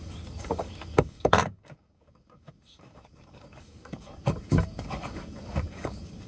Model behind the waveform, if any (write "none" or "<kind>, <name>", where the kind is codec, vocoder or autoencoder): codec, DAC